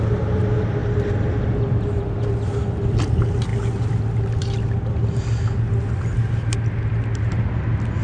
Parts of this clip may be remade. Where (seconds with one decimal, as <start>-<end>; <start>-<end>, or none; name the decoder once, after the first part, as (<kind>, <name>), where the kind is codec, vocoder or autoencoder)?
none